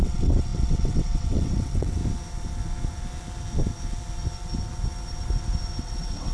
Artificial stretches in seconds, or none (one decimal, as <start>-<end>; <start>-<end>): 0.0-2.0; 5.8-6.3